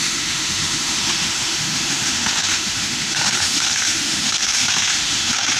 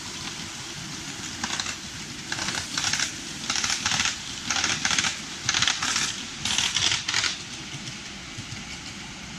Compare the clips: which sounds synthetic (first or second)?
first